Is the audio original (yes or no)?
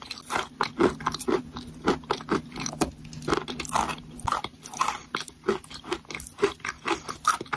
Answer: yes